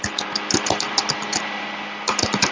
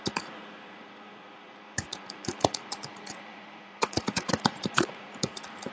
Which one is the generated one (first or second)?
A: second